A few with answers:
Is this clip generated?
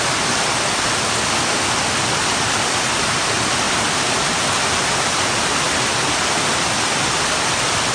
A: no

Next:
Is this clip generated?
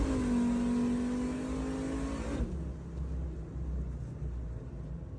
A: no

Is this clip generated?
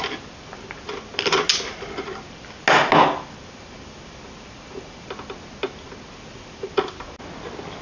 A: no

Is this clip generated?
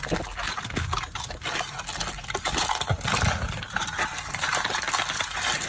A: no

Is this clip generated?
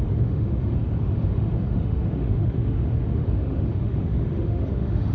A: yes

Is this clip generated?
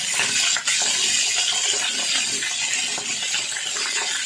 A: no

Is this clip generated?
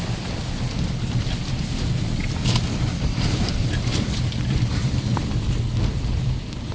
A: yes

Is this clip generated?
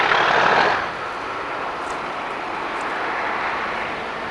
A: no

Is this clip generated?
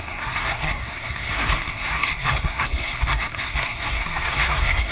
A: yes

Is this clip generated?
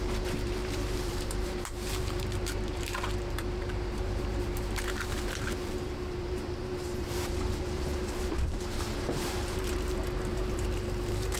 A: yes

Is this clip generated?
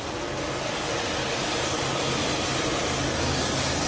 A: no